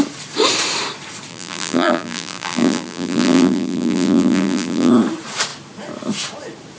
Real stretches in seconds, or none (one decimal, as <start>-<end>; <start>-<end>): 0.0-1.3; 4.9-6.8